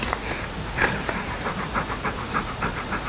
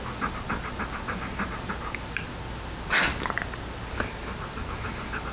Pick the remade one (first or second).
first